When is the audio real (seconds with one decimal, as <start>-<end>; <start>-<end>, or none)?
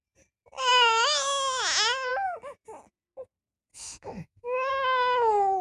0.0-3.7; 4.7-5.6